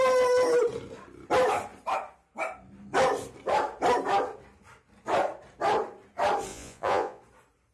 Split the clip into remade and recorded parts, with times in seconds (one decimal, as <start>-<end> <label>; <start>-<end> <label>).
0.0-6.5 recorded; 6.5-7.2 remade; 7.2-7.7 recorded